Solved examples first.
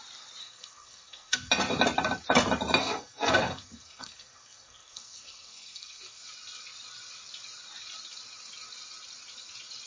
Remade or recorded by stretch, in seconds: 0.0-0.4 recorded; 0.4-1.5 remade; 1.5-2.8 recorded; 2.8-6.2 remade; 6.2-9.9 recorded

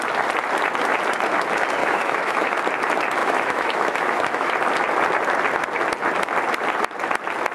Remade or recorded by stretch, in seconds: 0.0-1.8 recorded; 1.8-2.6 remade; 2.6-3.2 recorded; 3.2-4.5 remade; 4.5-7.5 recorded

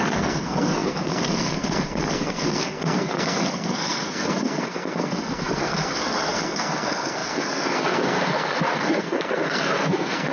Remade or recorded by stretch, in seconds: 0.0-10.3 remade